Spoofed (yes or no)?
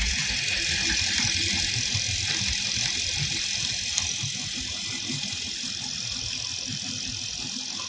no